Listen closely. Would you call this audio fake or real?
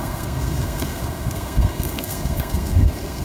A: fake